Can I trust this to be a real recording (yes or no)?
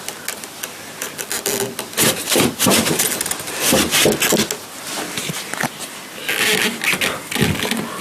yes